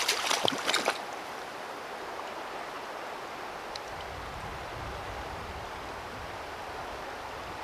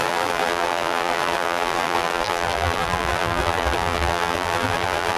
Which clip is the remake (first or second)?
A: second